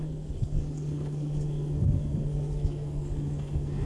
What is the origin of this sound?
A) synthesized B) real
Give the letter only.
A